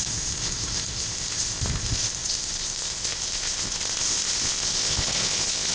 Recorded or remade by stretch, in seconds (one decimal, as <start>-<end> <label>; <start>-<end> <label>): 0.0-5.7 remade